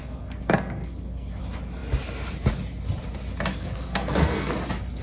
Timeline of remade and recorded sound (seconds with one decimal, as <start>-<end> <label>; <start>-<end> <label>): 0.0-1.4 remade; 1.4-3.5 recorded; 3.5-4.5 remade; 4.5-5.0 recorded